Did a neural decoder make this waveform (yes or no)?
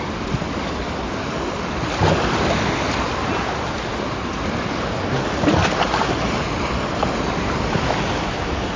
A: no